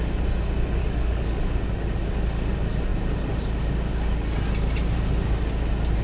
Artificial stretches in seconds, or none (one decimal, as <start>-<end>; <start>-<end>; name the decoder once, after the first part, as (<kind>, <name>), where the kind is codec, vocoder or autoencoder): 0.8-1.4 (codec, DAC)